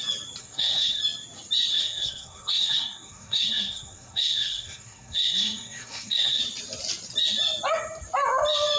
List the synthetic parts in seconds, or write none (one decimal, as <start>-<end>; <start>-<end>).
0.4-1.0; 1.7-6.4